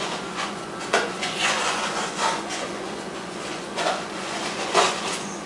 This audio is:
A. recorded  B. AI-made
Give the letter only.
B